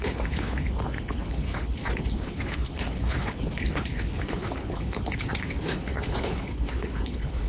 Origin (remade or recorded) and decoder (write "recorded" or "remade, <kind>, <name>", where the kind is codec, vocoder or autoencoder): remade, codec, HILCodec